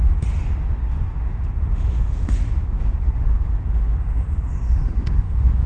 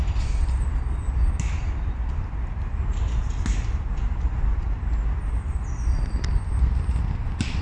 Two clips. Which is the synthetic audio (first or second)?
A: first